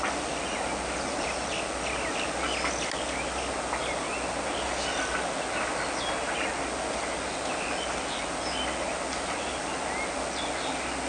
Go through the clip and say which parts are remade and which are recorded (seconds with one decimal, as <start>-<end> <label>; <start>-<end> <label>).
0.0-11.1 recorded